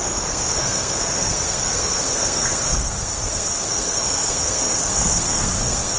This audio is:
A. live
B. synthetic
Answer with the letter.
B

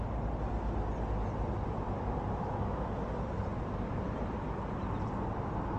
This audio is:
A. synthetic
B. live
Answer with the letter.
B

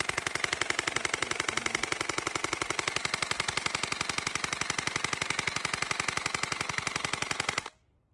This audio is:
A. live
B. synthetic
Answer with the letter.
A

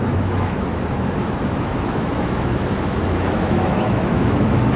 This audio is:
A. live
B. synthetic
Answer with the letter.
B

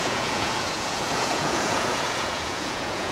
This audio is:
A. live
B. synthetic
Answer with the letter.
B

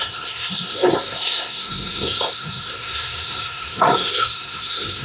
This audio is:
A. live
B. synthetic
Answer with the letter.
B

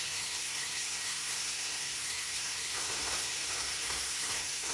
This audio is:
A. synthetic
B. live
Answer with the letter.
A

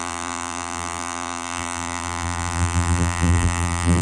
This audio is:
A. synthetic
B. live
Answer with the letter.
A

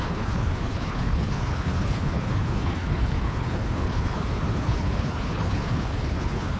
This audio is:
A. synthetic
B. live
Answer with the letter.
A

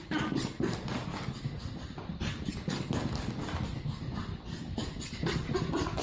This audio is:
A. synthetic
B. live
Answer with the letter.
B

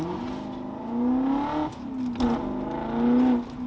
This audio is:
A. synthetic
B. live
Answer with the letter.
B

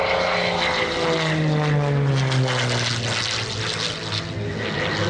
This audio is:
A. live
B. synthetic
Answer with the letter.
A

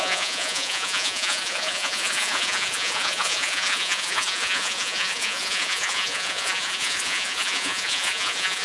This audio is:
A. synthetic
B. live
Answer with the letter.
A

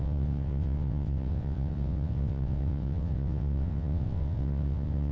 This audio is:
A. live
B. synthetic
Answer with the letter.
B